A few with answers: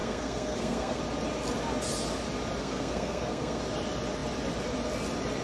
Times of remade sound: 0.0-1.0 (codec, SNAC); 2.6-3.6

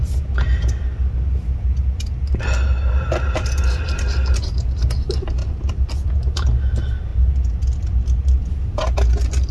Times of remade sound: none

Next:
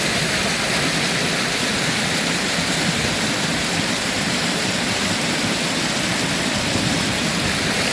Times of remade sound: 0.0-7.9 (vocoder, BigVGAN v2)

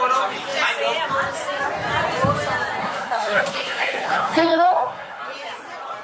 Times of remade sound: 2.8-5.2 (codec, SNAC)

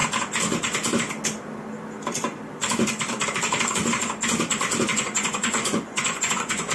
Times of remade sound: 4.9-6.7 (vocoder, Vocos)

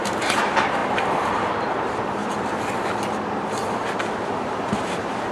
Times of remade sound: 0.0-2.2 (vocoder, BigVGAN v2); 4.1-5.3

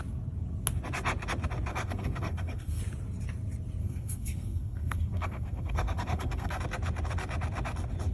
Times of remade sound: 1.7-2.8 (codec, SNAC); 3.8-6.6